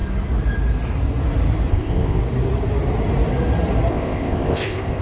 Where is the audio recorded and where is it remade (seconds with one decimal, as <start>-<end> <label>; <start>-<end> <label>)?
0.0-1.7 recorded; 1.7-2.2 remade; 2.2-3.9 recorded; 3.9-5.0 remade